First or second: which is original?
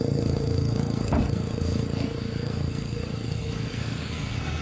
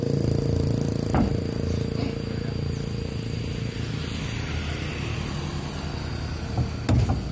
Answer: second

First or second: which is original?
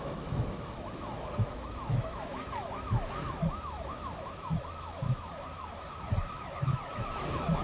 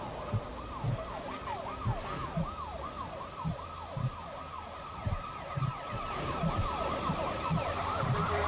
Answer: second